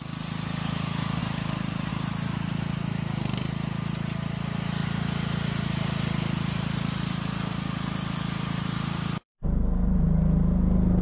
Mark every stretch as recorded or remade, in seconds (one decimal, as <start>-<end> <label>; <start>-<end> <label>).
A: 0.0-1.2 recorded; 1.2-1.9 remade; 1.9-4.8 recorded; 4.8-10.0 remade; 10.0-11.0 recorded